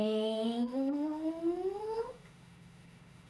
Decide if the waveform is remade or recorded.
remade